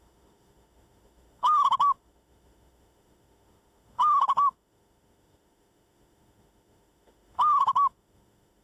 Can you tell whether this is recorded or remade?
remade